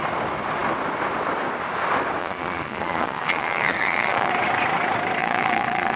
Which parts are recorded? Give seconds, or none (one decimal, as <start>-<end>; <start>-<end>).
0.0-2.2; 4.3-5.2